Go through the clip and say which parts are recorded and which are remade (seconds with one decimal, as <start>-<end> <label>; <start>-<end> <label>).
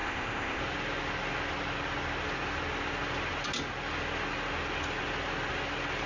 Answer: 0.0-0.6 remade; 0.6-6.1 recorded